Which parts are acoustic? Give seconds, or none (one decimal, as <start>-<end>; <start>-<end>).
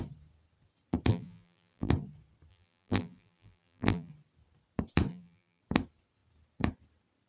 0.0-1.1; 1.9-2.5; 4.1-5.1; 5.6-7.3